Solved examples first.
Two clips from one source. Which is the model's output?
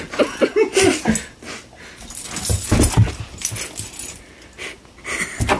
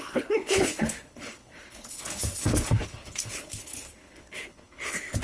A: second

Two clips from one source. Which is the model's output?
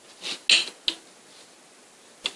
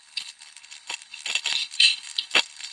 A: second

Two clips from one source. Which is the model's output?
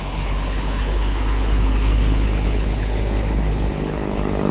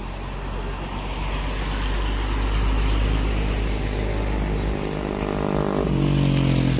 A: first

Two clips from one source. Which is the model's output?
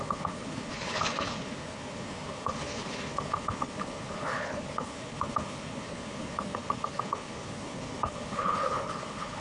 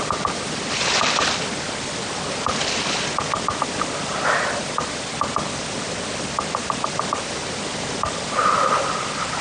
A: first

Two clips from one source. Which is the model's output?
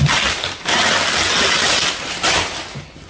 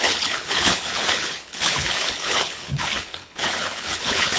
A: second